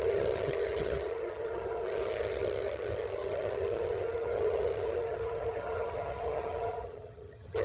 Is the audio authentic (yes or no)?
no